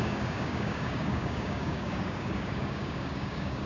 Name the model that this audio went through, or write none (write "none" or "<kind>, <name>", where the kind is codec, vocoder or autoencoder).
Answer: codec, DAC